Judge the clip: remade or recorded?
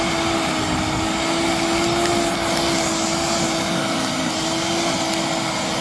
recorded